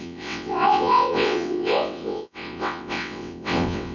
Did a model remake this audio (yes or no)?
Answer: yes